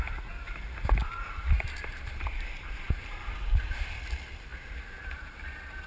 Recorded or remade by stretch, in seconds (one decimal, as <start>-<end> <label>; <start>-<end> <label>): 0.0-1.0 recorded; 1.0-4.0 remade; 4.0-5.9 recorded